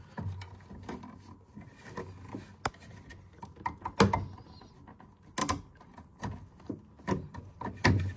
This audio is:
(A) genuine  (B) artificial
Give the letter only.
A